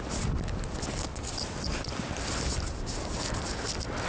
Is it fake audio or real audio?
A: real